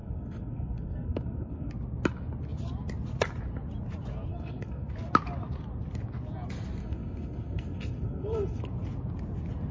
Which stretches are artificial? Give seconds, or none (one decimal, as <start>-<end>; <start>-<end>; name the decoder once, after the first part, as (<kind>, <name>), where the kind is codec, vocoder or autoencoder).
0.0-1.7 (codec, SNAC); 4.3-4.9; 6.8-8.6